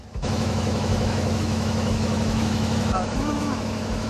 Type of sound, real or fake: fake